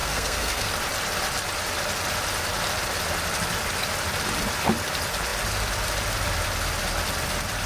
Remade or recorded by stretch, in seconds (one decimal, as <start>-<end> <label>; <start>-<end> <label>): 0.0-0.7 remade; 0.7-7.7 recorded